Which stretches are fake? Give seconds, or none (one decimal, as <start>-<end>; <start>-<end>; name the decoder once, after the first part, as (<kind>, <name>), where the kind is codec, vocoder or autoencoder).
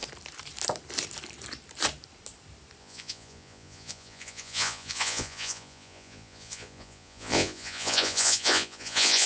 2.8-9.3 (vocoder, Vocos)